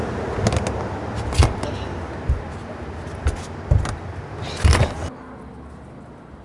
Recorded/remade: recorded